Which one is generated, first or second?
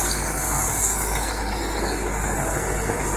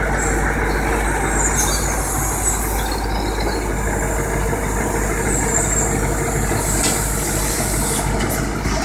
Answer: first